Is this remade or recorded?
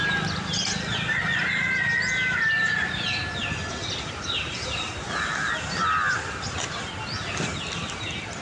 recorded